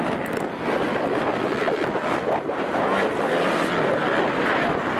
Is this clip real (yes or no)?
yes